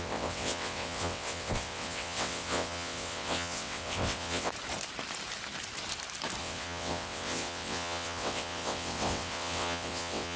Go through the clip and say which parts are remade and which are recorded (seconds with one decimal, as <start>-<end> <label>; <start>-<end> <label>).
0.0-4.5 remade; 4.5-6.4 recorded; 6.4-10.4 remade

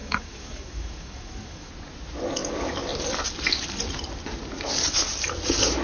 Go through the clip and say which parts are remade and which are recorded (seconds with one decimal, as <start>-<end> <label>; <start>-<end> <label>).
0.0-1.7 remade; 1.7-5.8 recorded